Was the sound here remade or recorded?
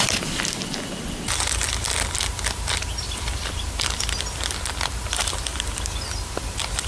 recorded